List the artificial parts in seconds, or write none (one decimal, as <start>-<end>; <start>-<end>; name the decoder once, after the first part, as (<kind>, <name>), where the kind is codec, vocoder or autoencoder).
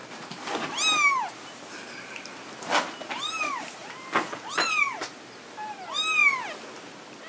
none